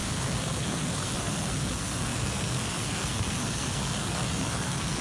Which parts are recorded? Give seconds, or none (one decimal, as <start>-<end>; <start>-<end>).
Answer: none